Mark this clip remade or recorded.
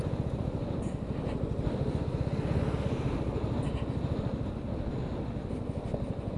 recorded